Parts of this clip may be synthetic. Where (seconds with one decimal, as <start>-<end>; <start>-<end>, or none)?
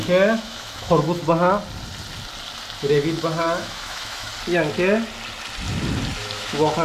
0.0-1.2; 2.8-4.3; 6.2-6.8